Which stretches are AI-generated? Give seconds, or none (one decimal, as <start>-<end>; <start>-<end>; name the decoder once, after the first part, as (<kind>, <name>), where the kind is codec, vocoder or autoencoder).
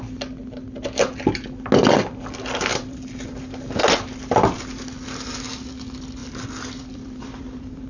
2.7-3.9 (vocoder, BigVGAN v2); 6.2-7.9